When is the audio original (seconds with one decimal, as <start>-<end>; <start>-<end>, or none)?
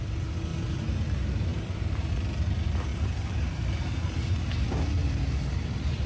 0.0-0.5; 1.0-1.5; 2.1-2.9; 4.4-6.1